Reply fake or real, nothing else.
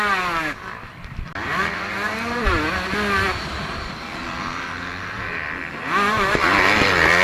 real